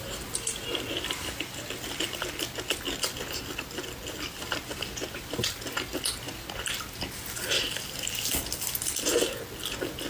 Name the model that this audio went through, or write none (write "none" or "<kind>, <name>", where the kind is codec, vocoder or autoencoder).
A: none